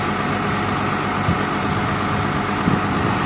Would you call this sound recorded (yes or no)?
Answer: yes